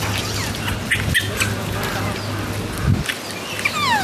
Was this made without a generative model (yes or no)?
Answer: yes